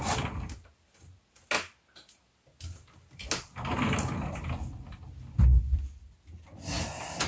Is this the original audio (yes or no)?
yes